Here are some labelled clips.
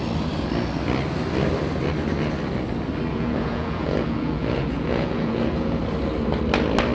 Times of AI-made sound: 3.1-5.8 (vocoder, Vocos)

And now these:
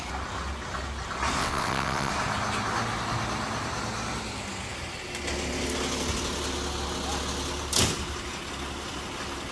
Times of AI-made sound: 1.4-2.1 (vocoder, WaveNeXt)

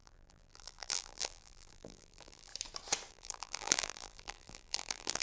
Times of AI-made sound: 0.0-2.5 (vocoder, BigVGAN v2); 3.1-5.2

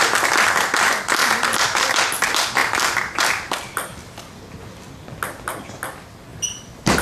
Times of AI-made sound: 1.2-1.9 (vocoder, BigVGAN v2); 2.6-3.3; 6.3-7.0

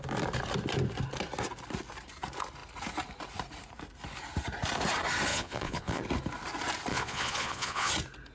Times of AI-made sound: 5.3-6.0 (vocoder, Vocos); 6.9-7.9

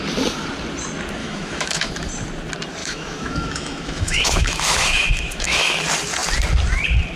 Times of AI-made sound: 1.2-1.9 (autoencoder, DAC-VAE); 2.8-5.8